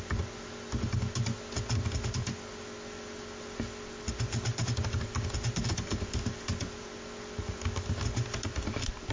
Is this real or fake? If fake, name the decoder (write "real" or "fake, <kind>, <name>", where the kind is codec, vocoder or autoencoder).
real